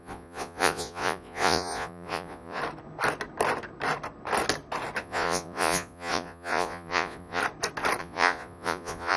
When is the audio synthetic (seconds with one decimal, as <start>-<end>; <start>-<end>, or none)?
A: 0.0-2.6; 5.0-7.4; 8.0-9.2